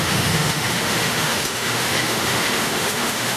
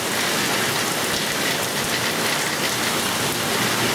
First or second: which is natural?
second